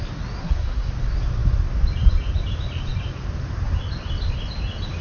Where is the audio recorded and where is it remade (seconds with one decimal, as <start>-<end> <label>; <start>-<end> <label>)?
0.0-0.4 recorded; 0.4-0.9 remade; 0.9-5.0 recorded